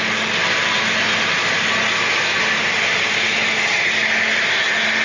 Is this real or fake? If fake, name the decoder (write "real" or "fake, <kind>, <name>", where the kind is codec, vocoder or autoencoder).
real